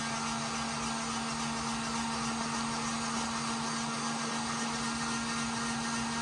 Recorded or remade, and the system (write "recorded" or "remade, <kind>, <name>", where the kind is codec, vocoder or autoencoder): recorded